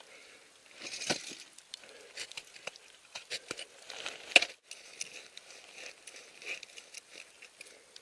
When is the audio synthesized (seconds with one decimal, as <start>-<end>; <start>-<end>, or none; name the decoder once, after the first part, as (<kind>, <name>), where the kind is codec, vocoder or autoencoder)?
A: none